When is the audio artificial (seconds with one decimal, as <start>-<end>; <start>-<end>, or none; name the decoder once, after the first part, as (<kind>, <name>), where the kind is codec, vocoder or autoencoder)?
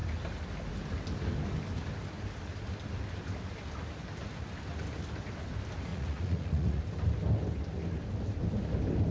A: 5.9-6.8 (vocoder, Vocos)